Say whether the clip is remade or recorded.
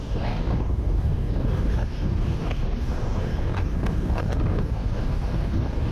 remade